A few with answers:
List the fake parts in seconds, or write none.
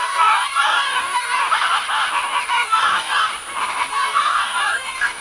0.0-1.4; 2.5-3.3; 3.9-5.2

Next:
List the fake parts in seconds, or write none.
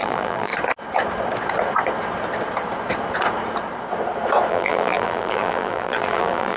0.0-0.5; 4.5-6.6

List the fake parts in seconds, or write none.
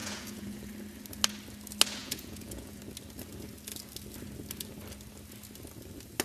0.0-0.7; 2.0-2.8